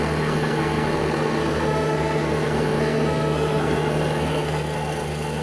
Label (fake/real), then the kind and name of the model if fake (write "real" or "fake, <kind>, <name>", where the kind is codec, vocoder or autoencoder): fake, codec, SNAC